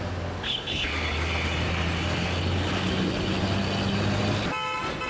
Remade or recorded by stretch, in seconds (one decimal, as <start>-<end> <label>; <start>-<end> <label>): 0.0-0.4 recorded; 0.4-0.9 remade; 0.9-5.1 recorded